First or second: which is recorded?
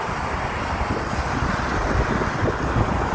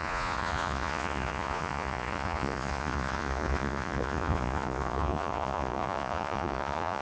first